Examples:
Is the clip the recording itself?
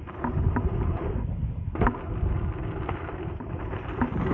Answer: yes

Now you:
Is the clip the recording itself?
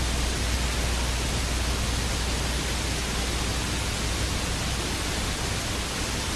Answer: yes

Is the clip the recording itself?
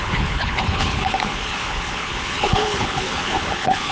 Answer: no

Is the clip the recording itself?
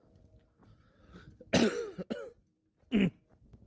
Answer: yes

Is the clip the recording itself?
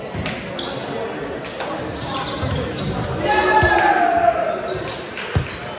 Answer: yes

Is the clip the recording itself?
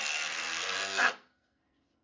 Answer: no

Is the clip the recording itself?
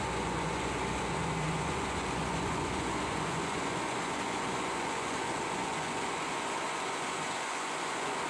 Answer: no